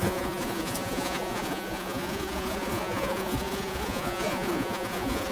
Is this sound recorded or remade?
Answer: remade